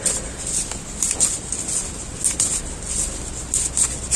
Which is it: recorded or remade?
recorded